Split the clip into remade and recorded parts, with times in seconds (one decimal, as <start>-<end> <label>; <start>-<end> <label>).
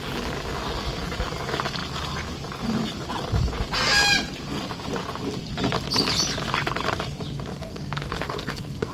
0.0-7.5 recorded; 7.5-8.9 remade